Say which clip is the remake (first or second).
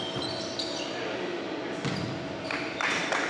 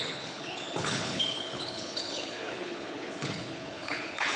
second